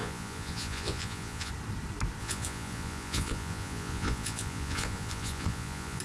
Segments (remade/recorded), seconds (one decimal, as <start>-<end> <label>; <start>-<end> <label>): 0.0-1.5 remade; 1.5-2.2 recorded; 2.2-6.0 remade